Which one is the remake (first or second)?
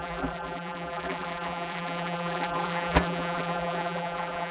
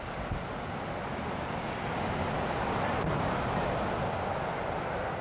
first